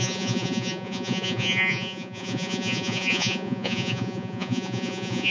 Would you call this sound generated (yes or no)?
yes